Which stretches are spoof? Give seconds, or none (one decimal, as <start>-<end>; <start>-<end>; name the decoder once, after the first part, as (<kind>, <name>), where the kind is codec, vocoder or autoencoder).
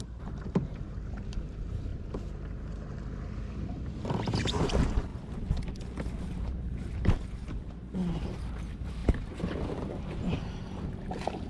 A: 0.0-1.9 (vocoder, BigVGAN v2); 3.7-5.1; 6.0-11.5